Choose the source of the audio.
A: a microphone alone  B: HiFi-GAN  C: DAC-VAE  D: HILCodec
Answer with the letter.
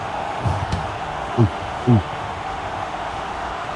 C